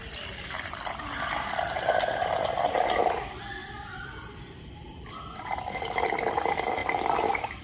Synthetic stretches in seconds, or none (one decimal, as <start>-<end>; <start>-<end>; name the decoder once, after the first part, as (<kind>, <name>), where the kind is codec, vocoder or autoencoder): 3.6-5.1 (vocoder, BigVGAN v2); 6.8-7.6